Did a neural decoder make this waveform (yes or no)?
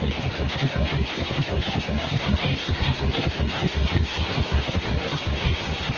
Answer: yes